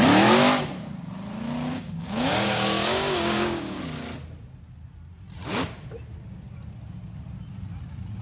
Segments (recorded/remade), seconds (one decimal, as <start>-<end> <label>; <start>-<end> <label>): 0.0-1.7 recorded; 1.7-3.8 remade; 3.8-8.2 recorded

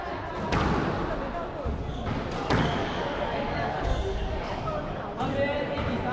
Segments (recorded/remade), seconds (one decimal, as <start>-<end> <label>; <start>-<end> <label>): 0.0-2.8 recorded; 2.8-5.0 remade; 5.0-6.1 recorded